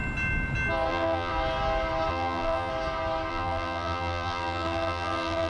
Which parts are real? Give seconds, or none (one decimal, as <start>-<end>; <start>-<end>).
0.0-0.9; 1.3-2.1; 2.7-3.3